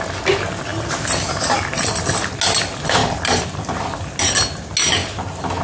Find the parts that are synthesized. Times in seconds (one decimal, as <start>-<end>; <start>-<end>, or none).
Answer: none